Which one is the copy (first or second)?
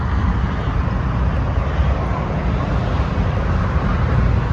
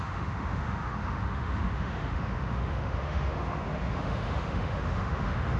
second